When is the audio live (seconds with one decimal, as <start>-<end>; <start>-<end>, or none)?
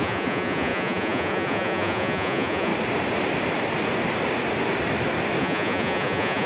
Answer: 2.7-5.4